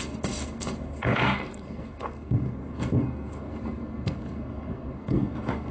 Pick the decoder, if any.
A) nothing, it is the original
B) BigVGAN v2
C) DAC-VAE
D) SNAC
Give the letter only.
D